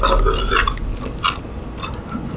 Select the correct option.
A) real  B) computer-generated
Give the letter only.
A